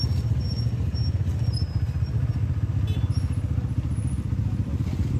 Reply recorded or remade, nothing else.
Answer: recorded